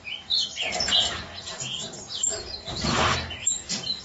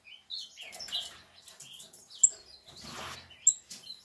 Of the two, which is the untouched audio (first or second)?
second